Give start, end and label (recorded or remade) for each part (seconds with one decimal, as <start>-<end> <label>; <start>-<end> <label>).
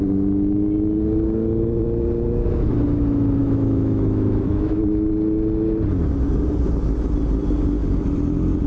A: 0.0-3.4 recorded; 3.4-5.1 remade; 5.1-8.7 recorded